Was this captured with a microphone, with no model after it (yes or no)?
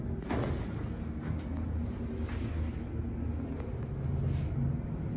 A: yes